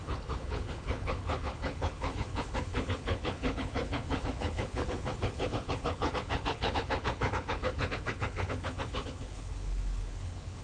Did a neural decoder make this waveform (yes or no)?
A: yes